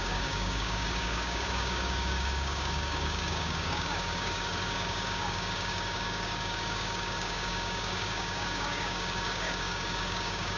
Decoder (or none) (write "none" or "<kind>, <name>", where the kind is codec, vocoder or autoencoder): codec, DAC